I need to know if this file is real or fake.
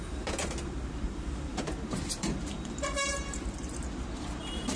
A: fake